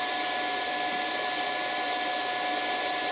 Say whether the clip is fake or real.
real